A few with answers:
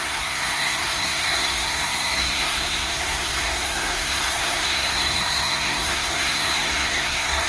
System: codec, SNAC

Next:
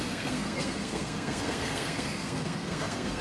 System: codec, SNAC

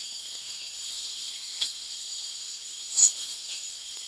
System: codec, SNAC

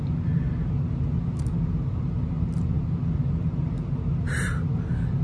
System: none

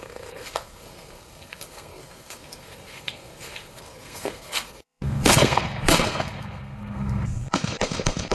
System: codec, SNAC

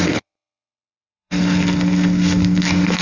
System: codec, SNAC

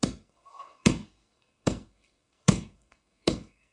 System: codec, SNAC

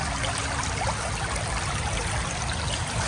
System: none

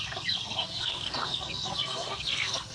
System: codec, SNAC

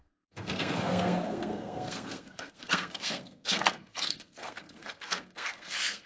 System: codec, SNAC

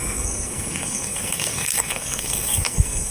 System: codec, SNAC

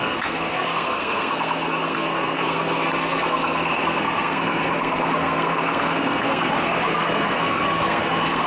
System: codec, SNAC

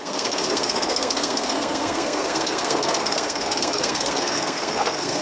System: codec, SNAC